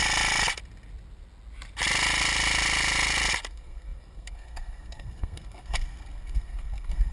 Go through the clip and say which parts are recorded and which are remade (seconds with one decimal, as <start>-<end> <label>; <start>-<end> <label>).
0.0-3.5 recorded; 3.5-7.1 remade